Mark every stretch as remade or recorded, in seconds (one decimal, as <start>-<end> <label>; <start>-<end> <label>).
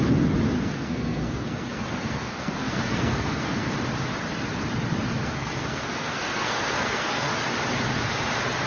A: 0.0-0.6 recorded; 0.6-3.7 remade; 3.7-5.2 recorded; 5.2-7.3 remade; 7.3-8.7 recorded